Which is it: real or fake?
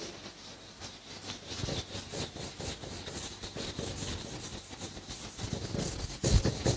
real